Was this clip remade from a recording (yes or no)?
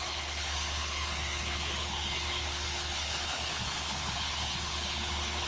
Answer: yes